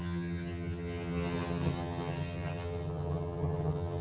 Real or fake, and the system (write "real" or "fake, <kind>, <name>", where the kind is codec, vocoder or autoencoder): fake, vocoder, HiFi-GAN